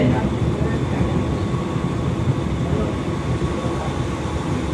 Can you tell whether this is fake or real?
real